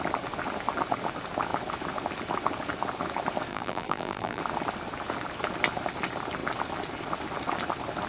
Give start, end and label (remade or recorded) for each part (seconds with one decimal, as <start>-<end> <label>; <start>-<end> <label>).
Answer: 0.0-3.5 recorded; 3.5-4.4 remade; 4.4-8.1 recorded